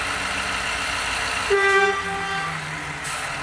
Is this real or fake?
real